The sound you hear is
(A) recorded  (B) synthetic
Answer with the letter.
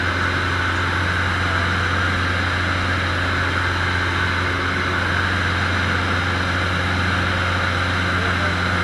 A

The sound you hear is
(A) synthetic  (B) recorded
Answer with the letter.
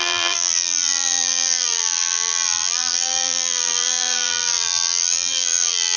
A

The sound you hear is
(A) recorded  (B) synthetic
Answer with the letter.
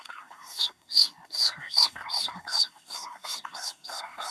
B